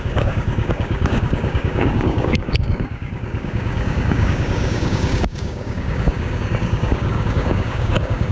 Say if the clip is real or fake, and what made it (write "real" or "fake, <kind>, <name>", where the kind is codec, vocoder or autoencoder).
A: fake, codec, DAC